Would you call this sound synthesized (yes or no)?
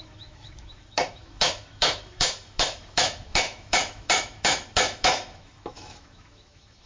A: yes